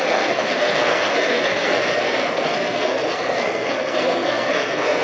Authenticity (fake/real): fake